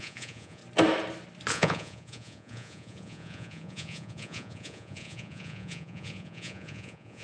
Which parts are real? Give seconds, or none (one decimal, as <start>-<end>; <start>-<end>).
0.6-1.5